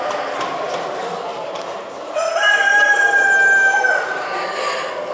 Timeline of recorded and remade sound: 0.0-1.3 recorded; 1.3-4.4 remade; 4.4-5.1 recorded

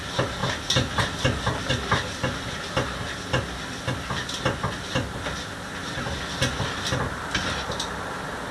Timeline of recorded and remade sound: 0.0-8.5 recorded

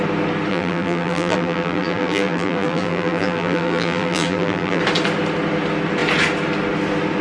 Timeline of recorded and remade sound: 0.0-0.5 recorded; 0.5-4.8 remade; 4.8-7.2 recorded